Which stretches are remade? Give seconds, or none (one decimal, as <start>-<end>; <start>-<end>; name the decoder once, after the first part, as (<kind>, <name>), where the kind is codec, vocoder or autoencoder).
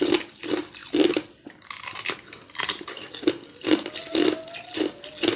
none